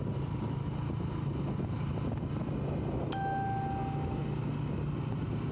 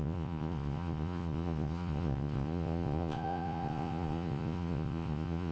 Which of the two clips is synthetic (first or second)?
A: second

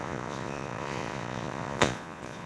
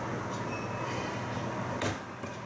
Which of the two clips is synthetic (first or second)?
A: first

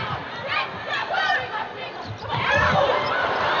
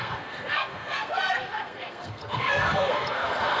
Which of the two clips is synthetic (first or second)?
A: second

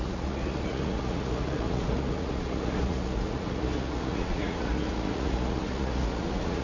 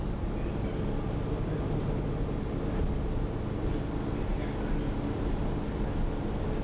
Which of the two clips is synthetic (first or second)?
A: first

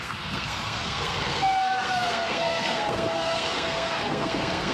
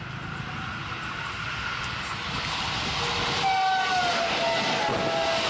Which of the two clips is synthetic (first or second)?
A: first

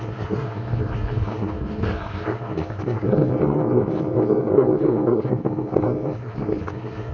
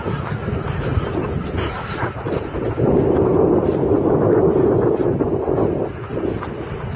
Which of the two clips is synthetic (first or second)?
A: first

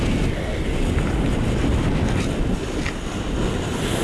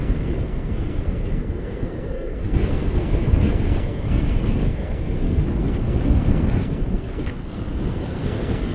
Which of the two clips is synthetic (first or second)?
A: second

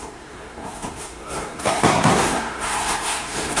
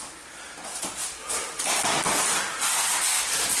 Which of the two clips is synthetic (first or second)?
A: first